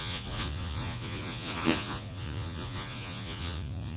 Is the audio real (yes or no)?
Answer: no